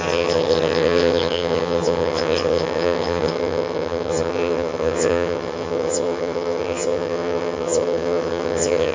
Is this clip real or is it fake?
fake